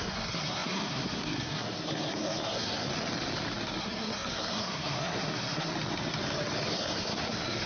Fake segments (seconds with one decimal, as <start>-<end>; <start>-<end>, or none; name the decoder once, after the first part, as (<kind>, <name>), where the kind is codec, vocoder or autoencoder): 0.0-2.9 (codec, SNAC); 3.8-5.7; 6.7-7.7